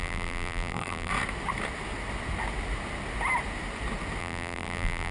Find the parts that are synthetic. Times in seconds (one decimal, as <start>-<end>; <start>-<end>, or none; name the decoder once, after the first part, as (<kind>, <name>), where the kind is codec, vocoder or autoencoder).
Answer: 0.0-1.1 (vocoder, BigVGAN v2); 4.2-5.1

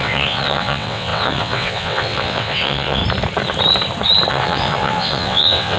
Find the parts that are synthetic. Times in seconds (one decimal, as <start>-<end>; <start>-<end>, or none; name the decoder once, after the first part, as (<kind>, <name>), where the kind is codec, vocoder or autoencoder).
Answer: 0.0-3.0 (vocoder, WaveNeXt); 4.3-5.8

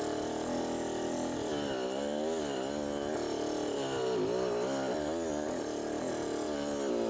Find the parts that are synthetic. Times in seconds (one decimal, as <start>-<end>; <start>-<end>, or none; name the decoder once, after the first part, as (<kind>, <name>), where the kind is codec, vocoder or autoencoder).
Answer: none